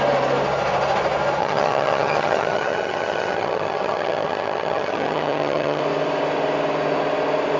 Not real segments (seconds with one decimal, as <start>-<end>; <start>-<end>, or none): 1.4-5.8